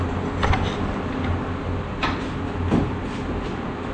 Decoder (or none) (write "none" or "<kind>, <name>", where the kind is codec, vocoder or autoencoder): none